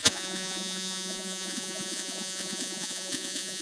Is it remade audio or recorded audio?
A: remade